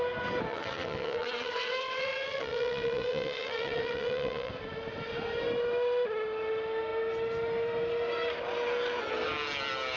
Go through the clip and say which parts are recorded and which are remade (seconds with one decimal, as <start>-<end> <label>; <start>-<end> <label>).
0.0-0.5 recorded; 0.5-4.5 remade; 4.5-10.0 recorded